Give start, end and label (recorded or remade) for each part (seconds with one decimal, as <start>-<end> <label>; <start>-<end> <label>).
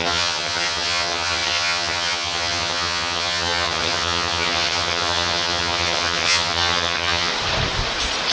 0.0-7.3 remade; 7.3-8.3 recorded